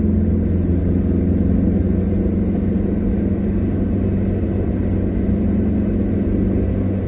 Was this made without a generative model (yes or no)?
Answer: yes